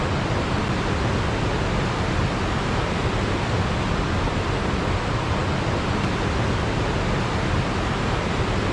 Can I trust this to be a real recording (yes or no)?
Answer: yes